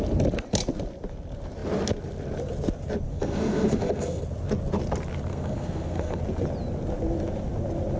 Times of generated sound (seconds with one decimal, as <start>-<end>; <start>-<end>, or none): 3.1-4.2; 5.3-6.2